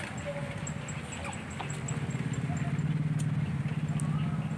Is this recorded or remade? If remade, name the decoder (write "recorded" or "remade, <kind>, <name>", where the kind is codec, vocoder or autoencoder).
recorded